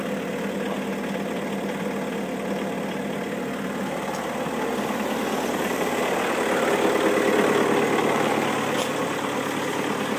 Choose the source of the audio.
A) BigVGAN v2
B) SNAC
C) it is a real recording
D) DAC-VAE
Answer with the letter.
C